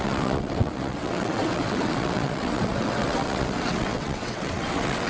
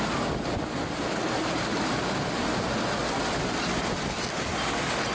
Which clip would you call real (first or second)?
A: second